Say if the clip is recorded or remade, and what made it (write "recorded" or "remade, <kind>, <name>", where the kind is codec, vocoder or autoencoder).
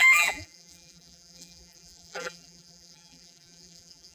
remade, vocoder, BigVGAN v2